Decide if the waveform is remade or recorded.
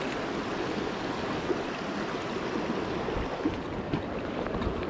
recorded